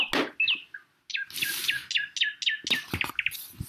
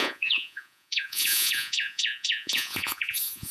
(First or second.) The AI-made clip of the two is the second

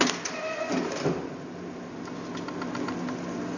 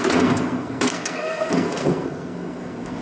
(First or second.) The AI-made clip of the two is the second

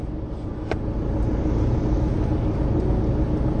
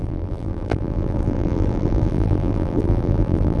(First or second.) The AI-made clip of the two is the second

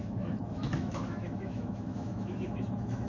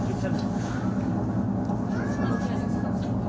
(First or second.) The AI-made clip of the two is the first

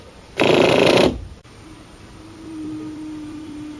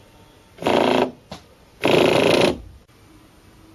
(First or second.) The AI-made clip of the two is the first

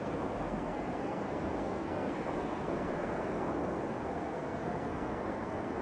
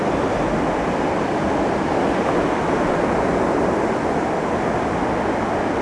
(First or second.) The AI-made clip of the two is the first